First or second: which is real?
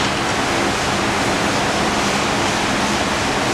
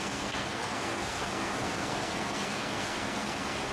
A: first